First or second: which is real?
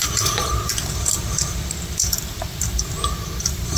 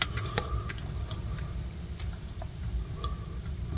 second